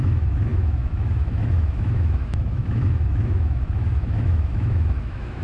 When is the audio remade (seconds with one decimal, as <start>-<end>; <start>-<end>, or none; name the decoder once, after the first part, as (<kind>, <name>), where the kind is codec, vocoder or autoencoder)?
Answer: 0.0-5.4 (autoencoder, DAC-VAE)